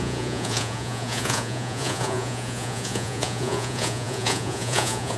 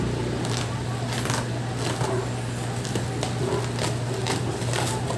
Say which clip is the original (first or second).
second